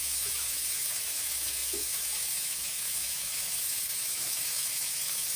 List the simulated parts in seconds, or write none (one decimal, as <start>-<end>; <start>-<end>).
0.0-5.4